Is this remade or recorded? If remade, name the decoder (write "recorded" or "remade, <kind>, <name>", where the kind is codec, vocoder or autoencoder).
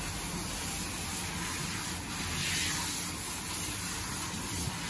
recorded